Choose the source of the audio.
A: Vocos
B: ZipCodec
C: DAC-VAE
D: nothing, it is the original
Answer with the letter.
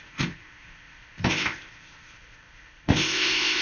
B